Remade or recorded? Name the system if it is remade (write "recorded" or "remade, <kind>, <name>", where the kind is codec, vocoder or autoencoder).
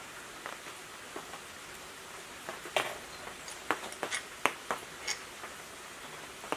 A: recorded